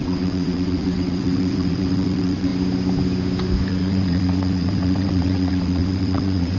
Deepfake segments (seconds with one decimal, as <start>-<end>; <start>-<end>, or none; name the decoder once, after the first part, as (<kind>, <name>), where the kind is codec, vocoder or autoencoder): 0.0-2.5 (vocoder, WaveNeXt); 3.7-6.6